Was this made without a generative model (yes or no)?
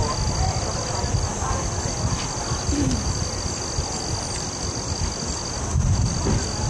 yes